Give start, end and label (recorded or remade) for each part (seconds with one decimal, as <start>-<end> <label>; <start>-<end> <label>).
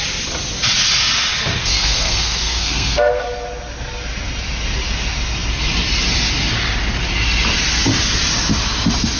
0.0-1.6 recorded; 1.6-3.2 remade; 3.2-9.2 recorded